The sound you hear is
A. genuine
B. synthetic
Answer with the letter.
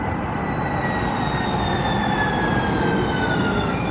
A